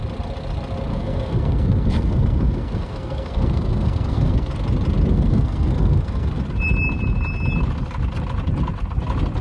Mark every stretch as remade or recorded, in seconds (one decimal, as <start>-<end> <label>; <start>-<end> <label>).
0.0-0.9 recorded; 0.9-4.5 remade; 4.5-5.1 recorded; 5.1-6.4 remade; 6.4-9.4 recorded